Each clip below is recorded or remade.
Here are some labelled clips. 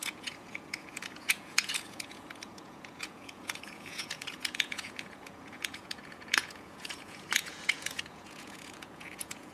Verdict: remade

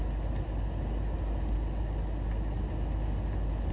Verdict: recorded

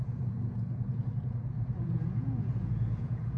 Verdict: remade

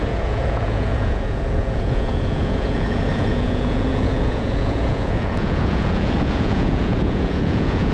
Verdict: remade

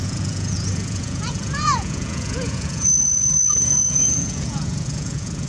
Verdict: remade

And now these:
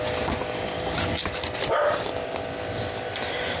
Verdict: recorded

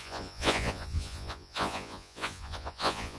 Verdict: remade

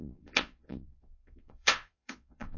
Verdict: remade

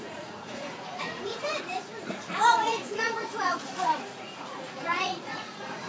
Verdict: remade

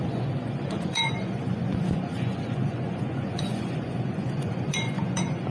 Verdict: remade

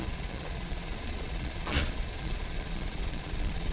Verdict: remade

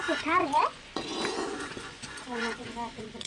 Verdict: remade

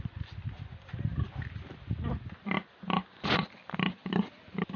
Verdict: recorded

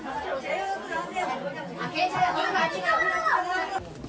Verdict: recorded